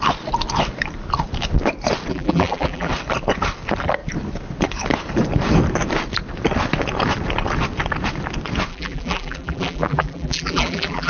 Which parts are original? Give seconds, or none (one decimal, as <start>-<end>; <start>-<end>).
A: 0.0-2.1; 2.9-8.7